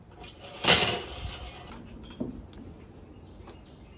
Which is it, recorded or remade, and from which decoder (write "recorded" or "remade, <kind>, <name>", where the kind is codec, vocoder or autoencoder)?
recorded